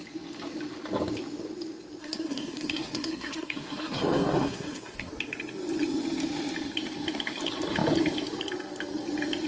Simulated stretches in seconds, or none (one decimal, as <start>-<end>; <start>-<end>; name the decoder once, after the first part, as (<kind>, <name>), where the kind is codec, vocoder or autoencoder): 2.0-5.1 (codec, SNAC)